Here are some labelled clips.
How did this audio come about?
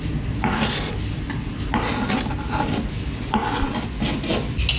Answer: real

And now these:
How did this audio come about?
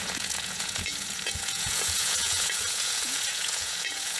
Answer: fake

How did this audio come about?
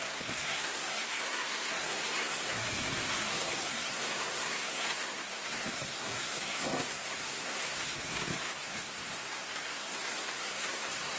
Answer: fake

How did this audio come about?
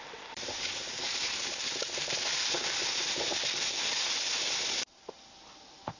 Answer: fake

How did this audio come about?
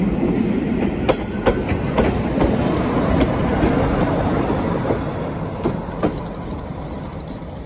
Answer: real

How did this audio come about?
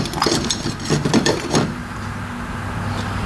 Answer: real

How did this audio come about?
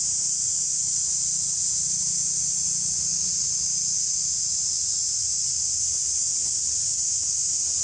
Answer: real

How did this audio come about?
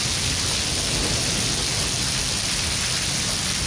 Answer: real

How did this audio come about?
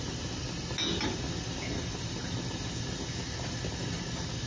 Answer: real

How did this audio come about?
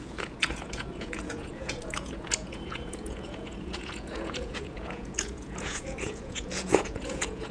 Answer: fake